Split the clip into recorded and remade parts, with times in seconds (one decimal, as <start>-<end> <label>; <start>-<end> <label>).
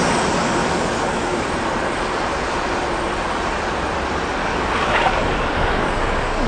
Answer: 0.0-0.6 recorded; 0.6-1.5 remade; 1.5-4.4 recorded; 4.4-6.5 remade